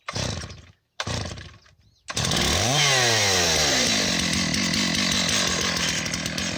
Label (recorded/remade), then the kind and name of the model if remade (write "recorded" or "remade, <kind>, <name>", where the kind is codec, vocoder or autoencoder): recorded